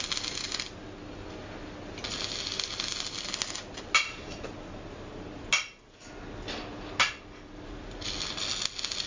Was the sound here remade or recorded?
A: recorded